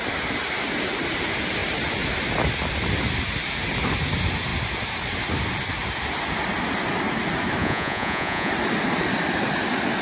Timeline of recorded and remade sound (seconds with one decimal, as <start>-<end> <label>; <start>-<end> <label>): 0.0-7.6 recorded; 7.6-8.5 remade; 8.5-10.0 recorded